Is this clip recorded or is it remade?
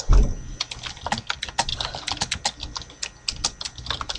recorded